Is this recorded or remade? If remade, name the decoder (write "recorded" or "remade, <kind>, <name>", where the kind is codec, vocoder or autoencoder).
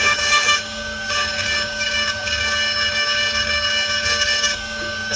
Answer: remade, codec, DAC